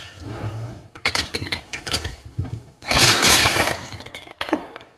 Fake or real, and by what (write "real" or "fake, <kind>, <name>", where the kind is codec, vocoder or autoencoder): fake, codec, SNAC